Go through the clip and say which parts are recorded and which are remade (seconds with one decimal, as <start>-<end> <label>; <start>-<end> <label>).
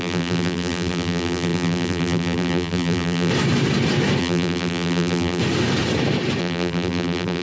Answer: 0.0-3.3 remade; 3.3-4.2 recorded; 4.2-5.4 remade; 5.4-6.4 recorded; 6.4-7.4 remade